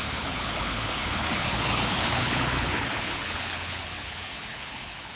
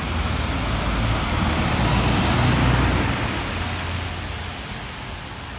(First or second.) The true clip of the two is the second